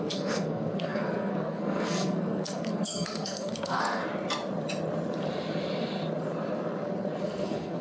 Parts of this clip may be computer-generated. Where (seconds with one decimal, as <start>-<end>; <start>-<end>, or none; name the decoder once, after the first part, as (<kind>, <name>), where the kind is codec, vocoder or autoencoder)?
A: 0.0-4.0 (codec, SNAC); 7.2-7.8